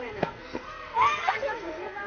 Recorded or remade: remade